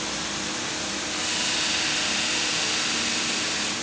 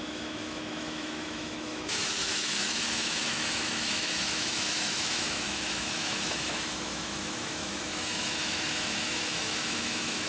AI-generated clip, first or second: second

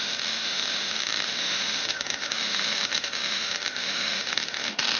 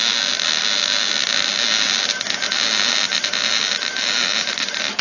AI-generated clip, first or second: first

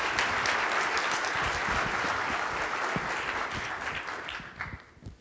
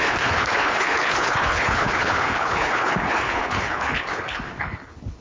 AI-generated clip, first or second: second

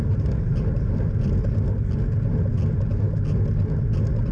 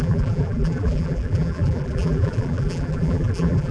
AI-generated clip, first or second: second